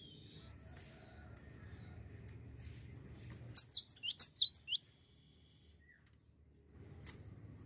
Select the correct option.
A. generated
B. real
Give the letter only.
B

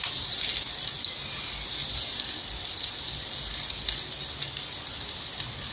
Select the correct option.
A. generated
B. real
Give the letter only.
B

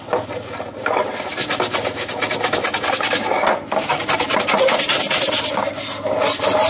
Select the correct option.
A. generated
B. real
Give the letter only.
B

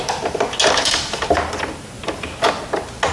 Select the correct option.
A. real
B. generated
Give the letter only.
A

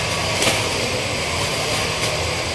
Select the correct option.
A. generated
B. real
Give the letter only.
B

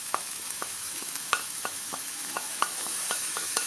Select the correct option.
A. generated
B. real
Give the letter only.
A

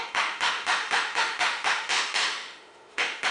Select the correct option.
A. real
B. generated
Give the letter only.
B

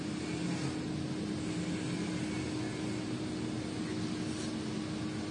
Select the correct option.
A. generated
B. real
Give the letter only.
B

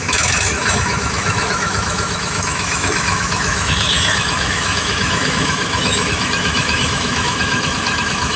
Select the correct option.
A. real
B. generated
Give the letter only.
B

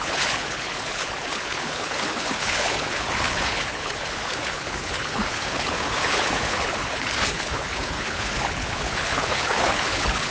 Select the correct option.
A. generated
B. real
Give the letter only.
A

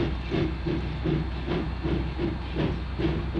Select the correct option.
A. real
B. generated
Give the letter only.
A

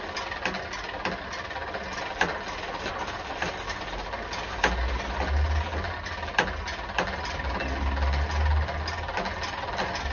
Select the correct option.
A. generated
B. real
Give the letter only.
B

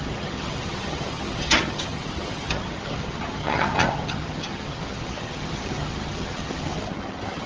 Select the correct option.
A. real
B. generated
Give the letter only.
B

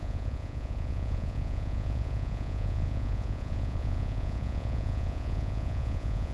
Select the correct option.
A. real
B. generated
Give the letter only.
B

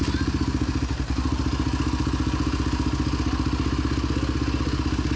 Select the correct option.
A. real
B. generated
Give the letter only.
A